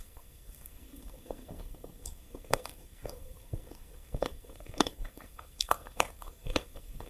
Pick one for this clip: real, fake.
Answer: fake